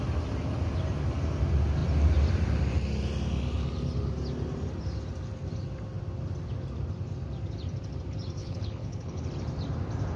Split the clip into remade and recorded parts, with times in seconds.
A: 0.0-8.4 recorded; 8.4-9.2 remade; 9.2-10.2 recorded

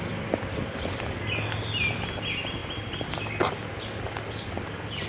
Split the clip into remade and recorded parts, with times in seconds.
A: 0.0-5.1 recorded

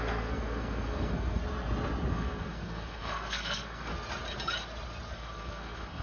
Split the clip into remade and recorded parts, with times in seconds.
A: 0.0-1.4 remade; 1.4-2.1 recorded; 2.1-3.9 remade; 3.9-5.1 recorded; 5.1-6.0 remade

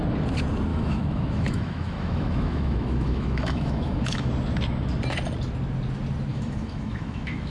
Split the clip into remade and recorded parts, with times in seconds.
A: 0.0-0.7 recorded; 0.7-4.3 remade; 4.3-6.3 recorded; 6.3-7.5 remade